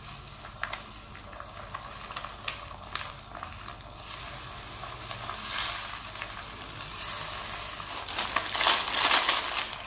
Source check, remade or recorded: recorded